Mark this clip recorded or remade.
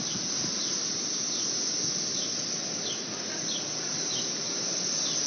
recorded